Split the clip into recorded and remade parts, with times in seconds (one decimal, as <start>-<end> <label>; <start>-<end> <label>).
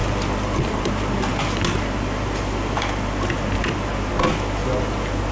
0.0-0.9 remade; 0.9-5.3 recorded